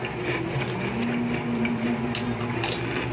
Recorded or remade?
recorded